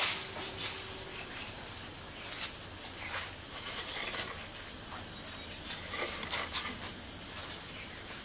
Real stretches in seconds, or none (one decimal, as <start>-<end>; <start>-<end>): 0.0-1.1; 1.6-8.2